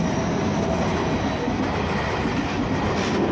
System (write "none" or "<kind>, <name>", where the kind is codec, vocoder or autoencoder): none